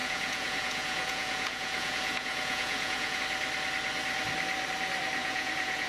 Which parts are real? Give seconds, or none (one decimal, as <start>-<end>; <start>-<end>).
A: 3.2-5.2